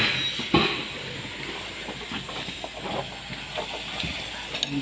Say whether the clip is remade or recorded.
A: recorded